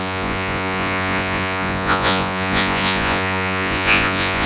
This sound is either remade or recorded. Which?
remade